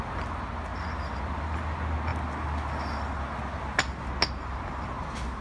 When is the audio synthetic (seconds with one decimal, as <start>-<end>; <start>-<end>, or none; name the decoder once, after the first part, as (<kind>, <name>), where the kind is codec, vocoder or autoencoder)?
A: none